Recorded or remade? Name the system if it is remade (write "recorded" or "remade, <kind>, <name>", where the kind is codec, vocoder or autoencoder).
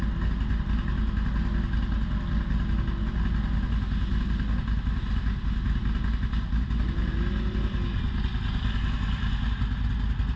recorded